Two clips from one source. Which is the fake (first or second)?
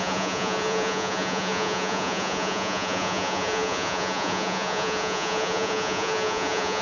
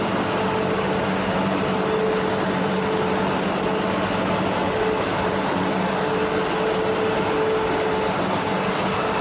first